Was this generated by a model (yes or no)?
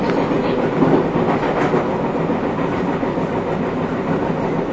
no